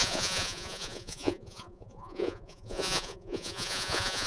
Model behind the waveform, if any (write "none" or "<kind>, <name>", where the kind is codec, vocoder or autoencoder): vocoder, Vocos